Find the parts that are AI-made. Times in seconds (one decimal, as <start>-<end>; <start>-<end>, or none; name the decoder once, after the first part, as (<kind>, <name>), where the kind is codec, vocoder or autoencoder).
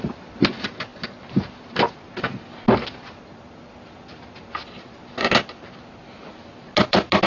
none